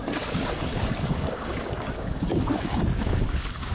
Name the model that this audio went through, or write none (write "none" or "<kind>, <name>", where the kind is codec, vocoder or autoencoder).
codec, DAC